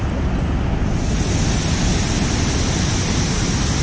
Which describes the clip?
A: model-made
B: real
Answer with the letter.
B